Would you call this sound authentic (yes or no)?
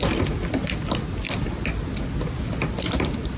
yes